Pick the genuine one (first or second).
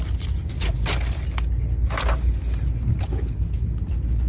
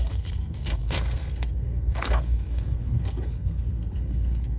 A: first